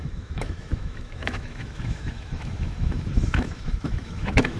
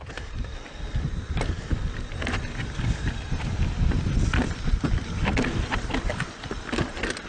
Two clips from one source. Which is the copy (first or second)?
first